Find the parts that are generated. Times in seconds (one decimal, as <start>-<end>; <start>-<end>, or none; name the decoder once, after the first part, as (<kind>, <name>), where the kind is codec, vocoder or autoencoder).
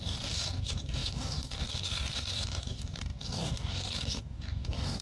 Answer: 0.0-5.0 (codec, DAC)